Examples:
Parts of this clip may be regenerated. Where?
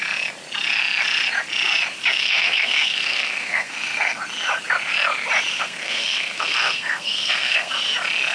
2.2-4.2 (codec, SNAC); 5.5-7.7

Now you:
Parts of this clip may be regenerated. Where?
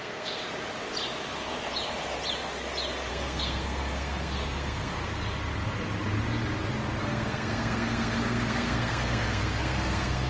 0.0-0.4 (codec, SNAC); 3.1-5.0; 7.0-10.3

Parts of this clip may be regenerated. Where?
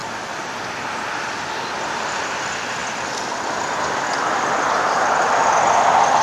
none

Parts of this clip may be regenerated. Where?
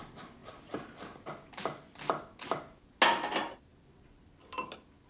none